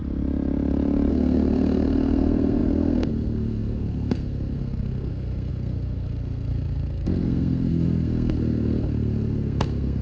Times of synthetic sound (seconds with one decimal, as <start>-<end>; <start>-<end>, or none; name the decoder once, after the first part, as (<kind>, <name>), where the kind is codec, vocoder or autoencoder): 1.1-10.0 (codec, SNAC)